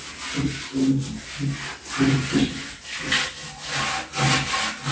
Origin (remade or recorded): recorded